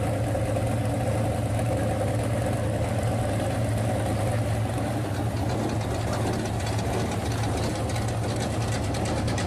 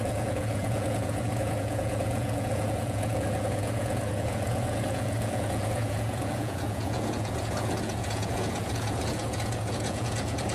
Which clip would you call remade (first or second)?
second